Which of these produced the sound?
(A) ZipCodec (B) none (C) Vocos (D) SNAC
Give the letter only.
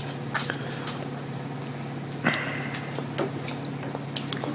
B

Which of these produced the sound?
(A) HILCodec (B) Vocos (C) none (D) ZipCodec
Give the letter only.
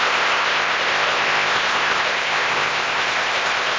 D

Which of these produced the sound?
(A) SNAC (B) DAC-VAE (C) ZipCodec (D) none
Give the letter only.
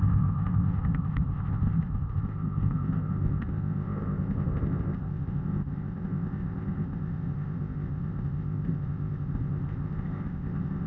C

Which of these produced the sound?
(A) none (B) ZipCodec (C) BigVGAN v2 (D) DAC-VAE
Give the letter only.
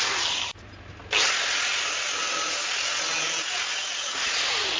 A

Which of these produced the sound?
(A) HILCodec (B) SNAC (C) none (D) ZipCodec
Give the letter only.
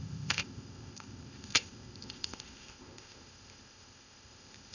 D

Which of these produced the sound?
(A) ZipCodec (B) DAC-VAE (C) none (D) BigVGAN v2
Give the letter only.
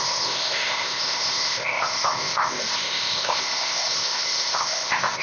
A